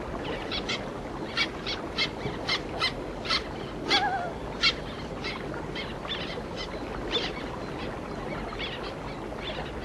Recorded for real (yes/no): yes